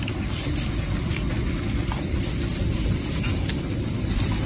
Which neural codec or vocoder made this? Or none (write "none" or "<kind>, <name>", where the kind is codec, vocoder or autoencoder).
none